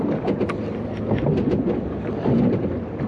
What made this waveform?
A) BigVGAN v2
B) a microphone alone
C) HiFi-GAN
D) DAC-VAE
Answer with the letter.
B